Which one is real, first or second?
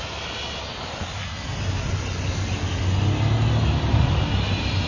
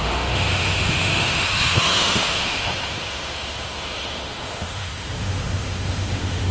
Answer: first